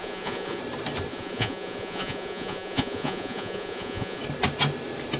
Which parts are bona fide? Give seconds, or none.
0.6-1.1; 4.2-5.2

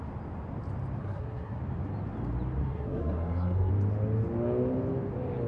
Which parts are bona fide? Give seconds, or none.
0.0-1.0; 1.6-2.6; 3.7-5.5

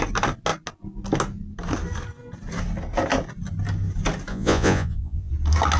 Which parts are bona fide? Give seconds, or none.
0.0-4.3; 5.3-5.8

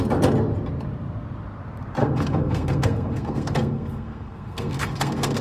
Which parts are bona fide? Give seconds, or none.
0.0-2.0

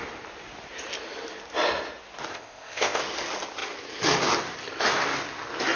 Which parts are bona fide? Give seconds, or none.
0.0-2.3; 3.0-5.8

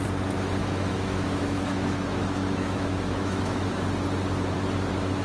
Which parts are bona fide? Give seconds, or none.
0.0-0.6; 3.7-5.2

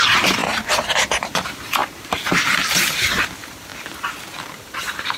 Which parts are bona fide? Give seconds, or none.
3.7-4.4